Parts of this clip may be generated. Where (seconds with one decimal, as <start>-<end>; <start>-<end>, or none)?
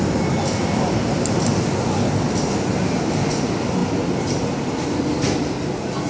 none